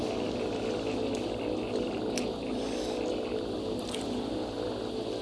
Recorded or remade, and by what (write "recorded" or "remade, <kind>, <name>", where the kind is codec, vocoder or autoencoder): recorded